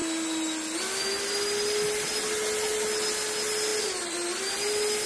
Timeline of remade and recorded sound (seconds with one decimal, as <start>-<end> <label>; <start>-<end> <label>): 0.0-5.1 recorded